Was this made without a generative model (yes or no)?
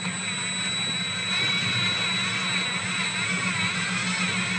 yes